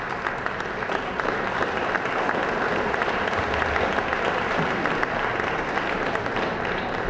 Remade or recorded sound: recorded